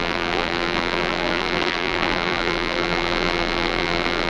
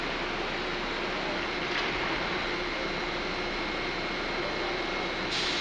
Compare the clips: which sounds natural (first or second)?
second